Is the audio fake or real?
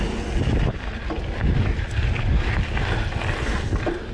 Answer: real